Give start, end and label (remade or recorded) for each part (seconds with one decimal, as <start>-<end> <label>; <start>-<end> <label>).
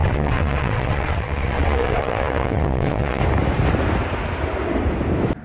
0.0-3.2 remade; 3.2-5.4 recorded